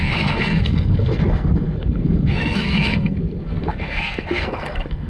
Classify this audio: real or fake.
fake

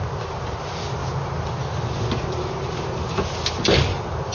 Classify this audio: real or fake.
real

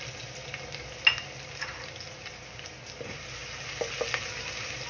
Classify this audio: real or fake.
real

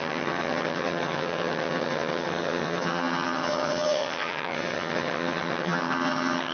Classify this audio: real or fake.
fake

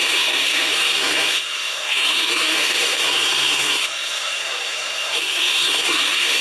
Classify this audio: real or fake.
fake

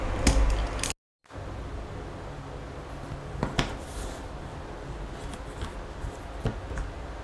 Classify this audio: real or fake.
real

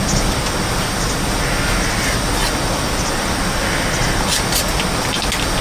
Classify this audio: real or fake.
real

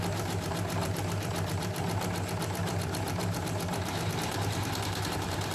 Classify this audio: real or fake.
fake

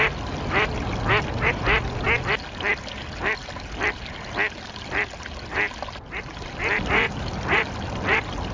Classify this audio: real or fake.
real